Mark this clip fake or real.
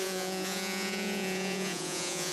fake